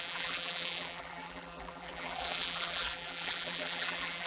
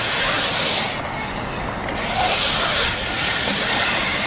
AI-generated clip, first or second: first